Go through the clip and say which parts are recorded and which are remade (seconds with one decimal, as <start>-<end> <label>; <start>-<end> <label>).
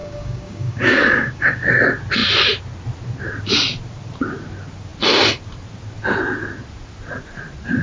0.0-1.7 remade; 1.7-7.8 recorded